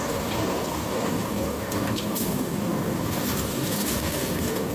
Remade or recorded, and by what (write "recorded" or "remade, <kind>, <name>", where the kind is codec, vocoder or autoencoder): remade, codec, DAC